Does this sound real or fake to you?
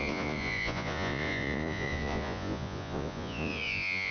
fake